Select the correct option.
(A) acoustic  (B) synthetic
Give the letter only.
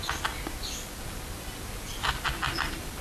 A